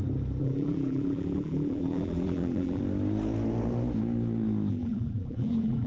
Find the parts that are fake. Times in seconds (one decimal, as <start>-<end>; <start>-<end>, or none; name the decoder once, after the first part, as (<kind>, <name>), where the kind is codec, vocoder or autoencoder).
0.4-2.8 (vocoder, BigVGAN v2); 4.7-5.9